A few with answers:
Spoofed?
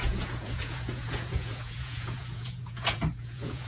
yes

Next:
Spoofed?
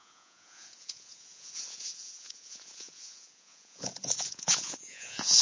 yes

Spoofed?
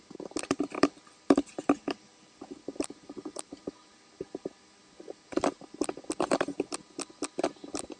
no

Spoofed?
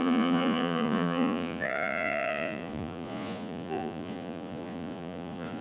yes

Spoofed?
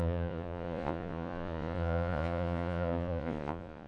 yes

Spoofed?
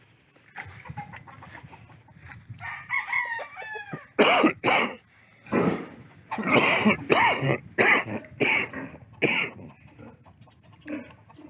no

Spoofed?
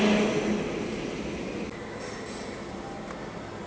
no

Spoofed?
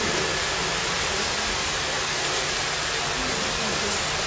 no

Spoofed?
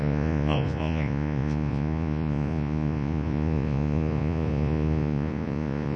yes